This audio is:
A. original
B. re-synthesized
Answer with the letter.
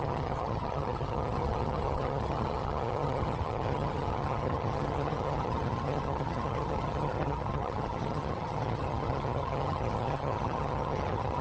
B